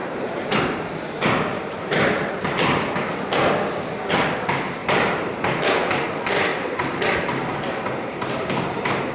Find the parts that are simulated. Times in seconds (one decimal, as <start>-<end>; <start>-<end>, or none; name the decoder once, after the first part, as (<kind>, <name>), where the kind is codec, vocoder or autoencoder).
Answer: 0.0-2.4 (vocoder, BigVGAN v2); 4.8-5.7; 6.5-9.1